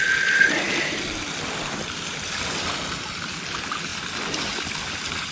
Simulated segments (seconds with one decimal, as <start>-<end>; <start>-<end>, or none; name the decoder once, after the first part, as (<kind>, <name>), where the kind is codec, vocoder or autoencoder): none